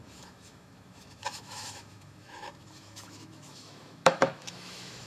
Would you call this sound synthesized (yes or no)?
yes